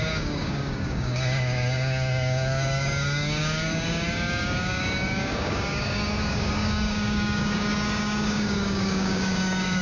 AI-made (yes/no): yes